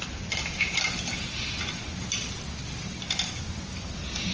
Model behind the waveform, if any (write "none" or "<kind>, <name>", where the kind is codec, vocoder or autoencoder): none